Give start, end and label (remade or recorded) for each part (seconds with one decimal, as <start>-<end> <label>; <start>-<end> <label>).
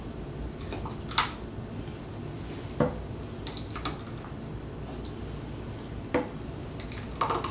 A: 0.0-7.5 recorded